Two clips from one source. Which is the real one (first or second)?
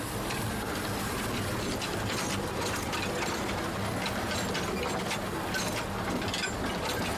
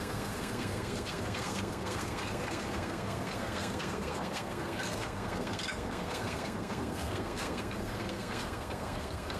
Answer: first